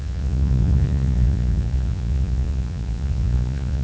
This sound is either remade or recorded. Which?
remade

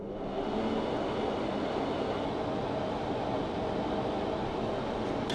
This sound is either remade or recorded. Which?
recorded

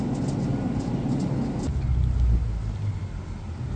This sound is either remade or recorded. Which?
recorded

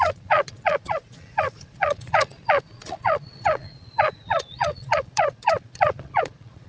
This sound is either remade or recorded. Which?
remade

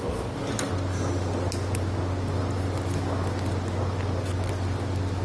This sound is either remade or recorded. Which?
recorded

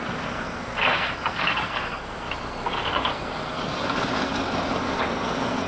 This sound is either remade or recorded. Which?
remade